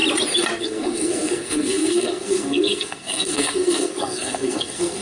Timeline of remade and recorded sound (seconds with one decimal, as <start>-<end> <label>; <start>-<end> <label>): 0.0-0.6 recorded; 0.6-5.0 remade